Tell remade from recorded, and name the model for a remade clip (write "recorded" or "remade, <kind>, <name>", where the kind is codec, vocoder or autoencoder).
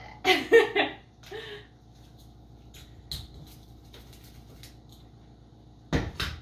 recorded